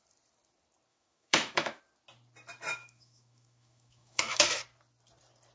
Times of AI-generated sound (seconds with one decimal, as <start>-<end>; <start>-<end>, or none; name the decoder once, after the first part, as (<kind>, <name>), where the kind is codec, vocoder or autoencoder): 0.9-1.8 (autoencoder, DAC-VAE); 2.8-4.6